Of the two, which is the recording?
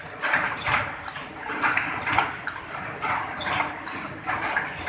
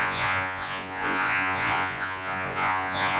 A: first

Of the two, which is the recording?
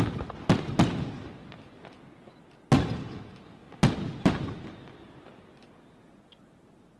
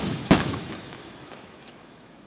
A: first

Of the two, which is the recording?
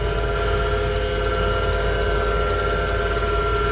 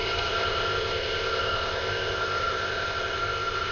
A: first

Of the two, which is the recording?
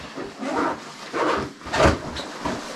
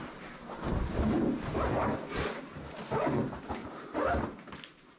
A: first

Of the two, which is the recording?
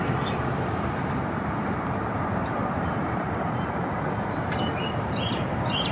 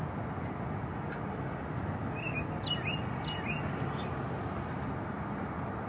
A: second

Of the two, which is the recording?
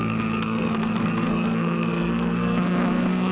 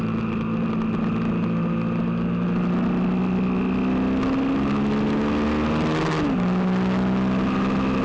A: second